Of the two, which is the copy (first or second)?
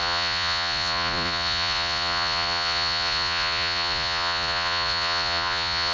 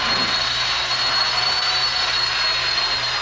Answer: first